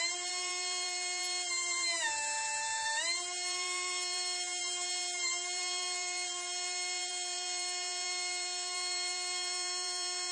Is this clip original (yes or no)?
no